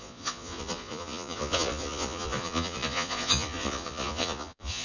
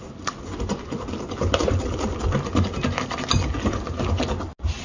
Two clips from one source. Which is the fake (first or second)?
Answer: first